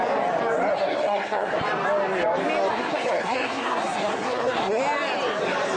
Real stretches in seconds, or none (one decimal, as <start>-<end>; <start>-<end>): 0.0-0.7; 1.6-2.7; 4.8-5.8